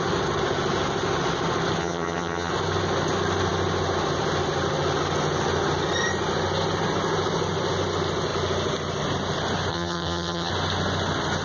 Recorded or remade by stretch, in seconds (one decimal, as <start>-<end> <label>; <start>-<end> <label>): 0.0-1.8 recorded; 1.8-2.5 remade; 2.5-9.7 recorded; 9.7-10.5 remade; 10.5-11.4 recorded